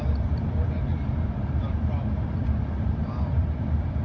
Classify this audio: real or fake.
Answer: fake